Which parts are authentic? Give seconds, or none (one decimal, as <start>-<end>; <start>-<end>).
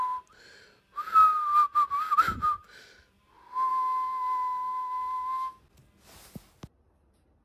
0.0-3.7; 5.6-7.4